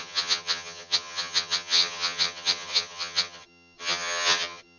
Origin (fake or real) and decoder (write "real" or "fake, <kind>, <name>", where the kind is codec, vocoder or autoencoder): fake, vocoder, HiFi-GAN